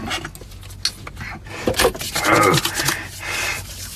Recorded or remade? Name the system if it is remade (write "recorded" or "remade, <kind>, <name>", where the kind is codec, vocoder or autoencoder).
recorded